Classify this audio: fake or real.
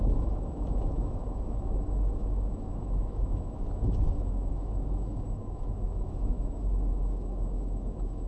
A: fake